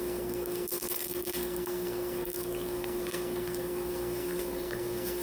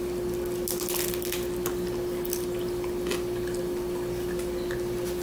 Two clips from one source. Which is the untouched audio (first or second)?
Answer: second